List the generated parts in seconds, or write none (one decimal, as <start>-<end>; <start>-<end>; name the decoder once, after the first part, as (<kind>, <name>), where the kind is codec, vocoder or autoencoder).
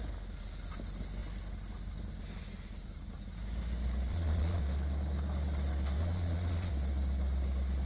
4.1-4.6 (vocoder, Vocos); 6.0-6.7